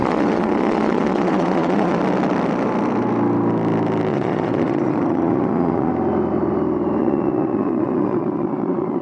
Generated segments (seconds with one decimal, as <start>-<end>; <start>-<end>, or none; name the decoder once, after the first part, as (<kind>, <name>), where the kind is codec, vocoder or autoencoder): 0.0-2.0 (vocoder, Vocos); 4.1-5.9; 7.0-9.0